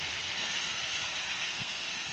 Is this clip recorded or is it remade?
remade